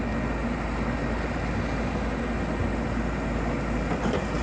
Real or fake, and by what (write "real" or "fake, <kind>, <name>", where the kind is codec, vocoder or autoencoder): real